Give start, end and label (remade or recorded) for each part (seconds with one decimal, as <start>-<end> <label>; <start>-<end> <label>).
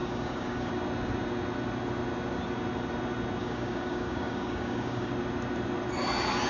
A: 0.0-0.7 remade; 0.7-3.4 recorded; 3.4-5.1 remade; 5.1-6.5 recorded